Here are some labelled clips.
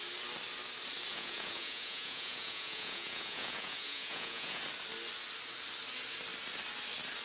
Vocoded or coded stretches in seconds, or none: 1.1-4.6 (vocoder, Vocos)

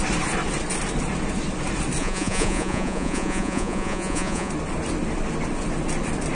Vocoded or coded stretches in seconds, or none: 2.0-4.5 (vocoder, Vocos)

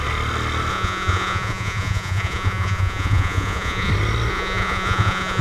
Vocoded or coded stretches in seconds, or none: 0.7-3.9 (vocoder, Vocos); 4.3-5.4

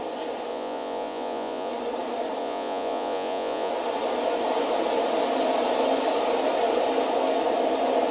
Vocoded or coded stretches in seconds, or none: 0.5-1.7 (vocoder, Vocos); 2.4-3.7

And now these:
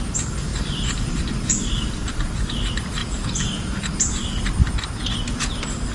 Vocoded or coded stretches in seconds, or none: 3.0-3.8 (vocoder, Vocos)